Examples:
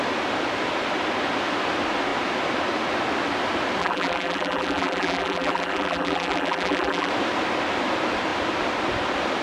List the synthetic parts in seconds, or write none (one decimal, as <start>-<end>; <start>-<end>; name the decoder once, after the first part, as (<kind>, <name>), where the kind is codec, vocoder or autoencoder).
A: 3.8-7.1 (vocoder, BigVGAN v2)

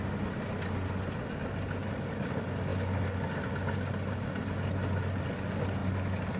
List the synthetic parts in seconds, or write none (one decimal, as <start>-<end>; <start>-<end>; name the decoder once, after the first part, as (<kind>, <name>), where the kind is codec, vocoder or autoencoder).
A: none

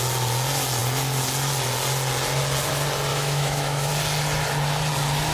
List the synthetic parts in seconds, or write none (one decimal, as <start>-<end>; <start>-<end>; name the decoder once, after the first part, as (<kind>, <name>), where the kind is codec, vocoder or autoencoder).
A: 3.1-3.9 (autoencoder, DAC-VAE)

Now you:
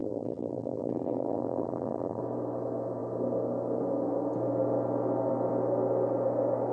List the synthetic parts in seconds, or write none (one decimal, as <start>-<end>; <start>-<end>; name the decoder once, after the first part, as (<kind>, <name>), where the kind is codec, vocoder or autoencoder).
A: 0.0-2.2 (vocoder, BigVGAN v2)

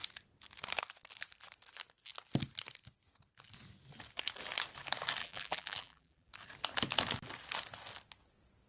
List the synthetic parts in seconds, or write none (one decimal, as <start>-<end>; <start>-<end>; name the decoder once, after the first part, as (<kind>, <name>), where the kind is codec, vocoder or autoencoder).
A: 5.2-6.3 (vocoder, BigVGAN v2)

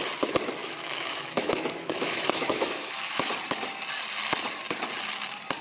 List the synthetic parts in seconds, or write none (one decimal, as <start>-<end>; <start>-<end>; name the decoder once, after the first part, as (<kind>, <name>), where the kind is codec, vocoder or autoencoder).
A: 0.6-3.3 (autoencoder, DAC-VAE)